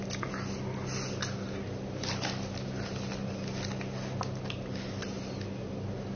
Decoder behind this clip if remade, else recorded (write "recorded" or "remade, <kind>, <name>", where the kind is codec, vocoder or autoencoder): recorded